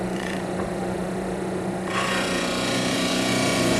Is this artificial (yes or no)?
yes